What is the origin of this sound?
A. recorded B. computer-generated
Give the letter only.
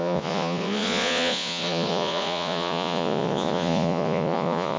B